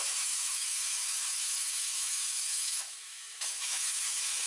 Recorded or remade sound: remade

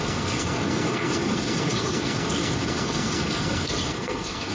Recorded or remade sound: remade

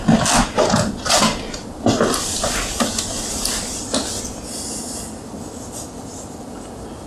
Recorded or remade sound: recorded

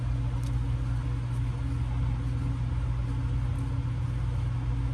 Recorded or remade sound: recorded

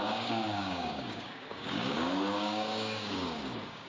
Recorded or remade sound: remade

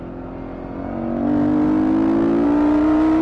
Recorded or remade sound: recorded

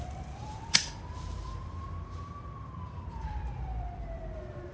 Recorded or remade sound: remade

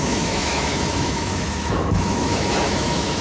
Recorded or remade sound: remade